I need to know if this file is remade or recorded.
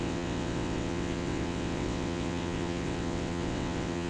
remade